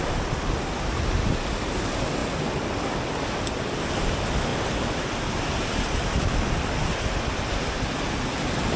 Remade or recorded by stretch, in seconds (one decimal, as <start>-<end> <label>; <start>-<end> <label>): 0.0-8.8 recorded